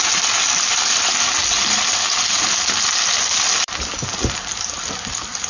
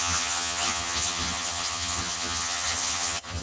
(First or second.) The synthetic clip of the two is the second